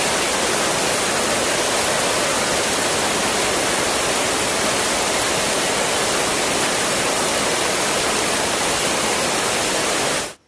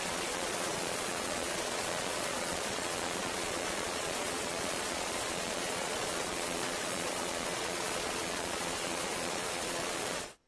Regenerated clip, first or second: second